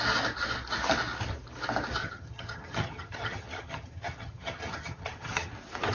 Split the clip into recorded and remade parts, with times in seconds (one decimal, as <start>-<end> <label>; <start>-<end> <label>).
0.0-2.0 recorded; 2.0-5.5 remade; 5.5-5.9 recorded